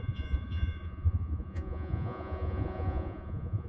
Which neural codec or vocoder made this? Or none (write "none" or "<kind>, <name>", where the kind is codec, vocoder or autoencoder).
vocoder, Vocos